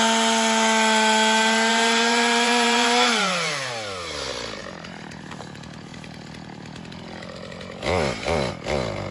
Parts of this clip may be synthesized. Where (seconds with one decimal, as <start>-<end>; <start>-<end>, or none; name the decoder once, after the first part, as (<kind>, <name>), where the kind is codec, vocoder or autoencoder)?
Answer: 1.7-3.7 (vocoder, BigVGAN v2); 4.6-5.2